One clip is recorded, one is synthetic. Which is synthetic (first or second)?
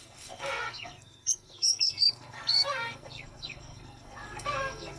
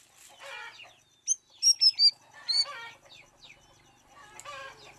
first